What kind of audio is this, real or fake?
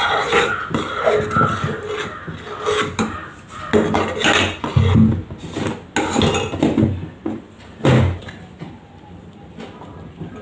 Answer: real